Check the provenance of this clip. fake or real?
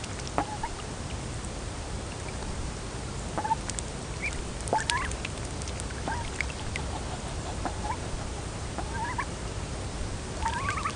real